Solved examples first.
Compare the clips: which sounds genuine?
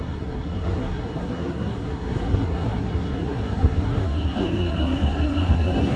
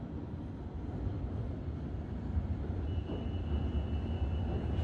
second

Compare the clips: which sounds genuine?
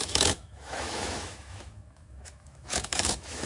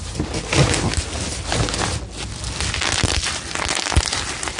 second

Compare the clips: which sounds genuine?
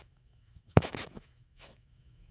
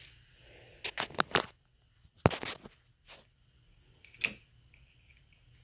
second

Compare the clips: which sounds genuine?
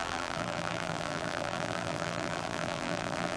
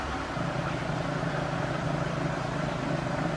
second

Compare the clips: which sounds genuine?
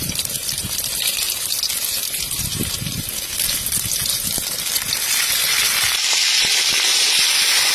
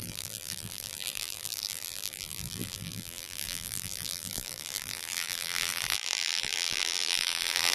first